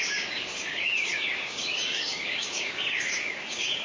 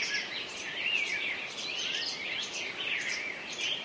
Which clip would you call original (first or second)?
second